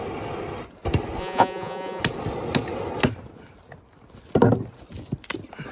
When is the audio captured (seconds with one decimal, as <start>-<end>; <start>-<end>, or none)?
0.0-1.2; 2.0-5.7